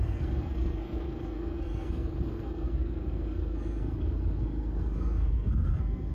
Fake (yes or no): yes